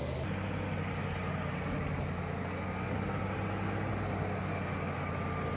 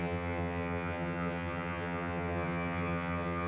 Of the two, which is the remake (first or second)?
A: second